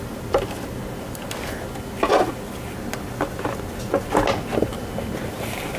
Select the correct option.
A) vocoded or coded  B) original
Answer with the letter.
B